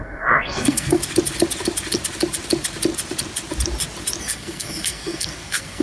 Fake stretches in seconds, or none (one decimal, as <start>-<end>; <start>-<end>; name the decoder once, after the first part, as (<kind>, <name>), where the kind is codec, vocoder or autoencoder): 0.0-1.0 (codec, SNAC); 4.2-5.8